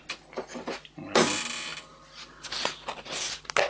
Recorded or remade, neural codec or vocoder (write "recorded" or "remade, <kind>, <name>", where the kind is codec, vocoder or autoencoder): recorded